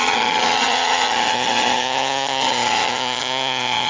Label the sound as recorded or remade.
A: remade